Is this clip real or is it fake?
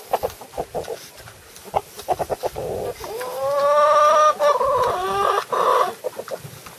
real